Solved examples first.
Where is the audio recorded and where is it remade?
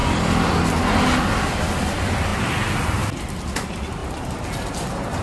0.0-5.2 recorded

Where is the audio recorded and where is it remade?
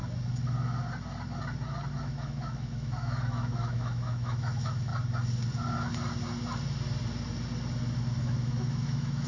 0.0-2.0 recorded; 2.0-4.9 remade; 4.9-8.2 recorded; 8.2-9.3 remade